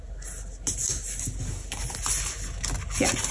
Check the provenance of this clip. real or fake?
real